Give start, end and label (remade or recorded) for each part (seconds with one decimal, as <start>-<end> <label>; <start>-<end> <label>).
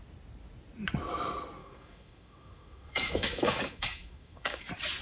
0.0-1.6 recorded; 1.6-4.6 remade; 4.6-5.0 recorded